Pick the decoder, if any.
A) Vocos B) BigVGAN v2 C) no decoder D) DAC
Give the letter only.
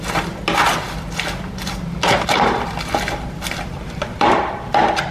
C